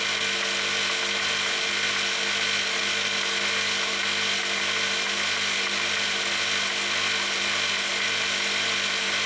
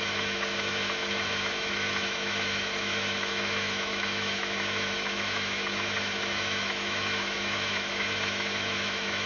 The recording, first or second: first